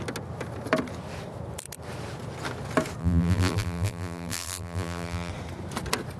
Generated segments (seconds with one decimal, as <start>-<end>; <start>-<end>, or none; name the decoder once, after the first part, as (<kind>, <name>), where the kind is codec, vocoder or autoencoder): 3.0-5.3 (vocoder, BigVGAN v2)